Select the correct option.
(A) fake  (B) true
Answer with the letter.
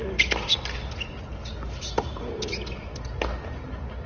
B